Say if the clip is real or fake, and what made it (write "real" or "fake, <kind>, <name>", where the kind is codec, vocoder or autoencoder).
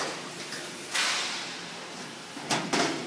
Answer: real